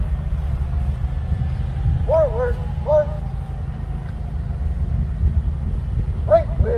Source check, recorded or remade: recorded